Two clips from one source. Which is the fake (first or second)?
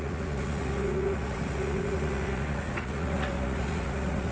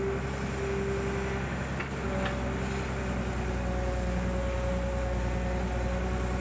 first